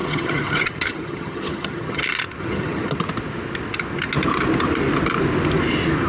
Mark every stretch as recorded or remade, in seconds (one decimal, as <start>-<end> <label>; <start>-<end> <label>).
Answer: 0.0-2.0 remade; 2.0-2.4 recorded; 2.4-2.9 remade; 2.9-6.1 recorded